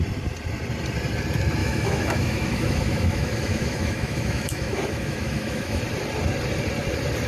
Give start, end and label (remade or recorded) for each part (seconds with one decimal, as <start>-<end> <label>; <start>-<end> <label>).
0.0-1.6 recorded; 1.6-5.8 remade; 5.8-7.3 recorded